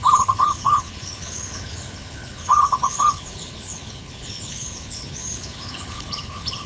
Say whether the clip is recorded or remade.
remade